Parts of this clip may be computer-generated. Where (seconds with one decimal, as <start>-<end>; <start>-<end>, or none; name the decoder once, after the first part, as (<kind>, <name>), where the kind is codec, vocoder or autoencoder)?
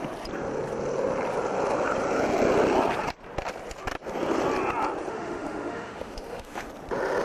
5.1-6.7 (autoencoder, DAC-VAE)